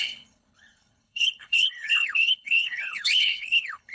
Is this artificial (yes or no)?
yes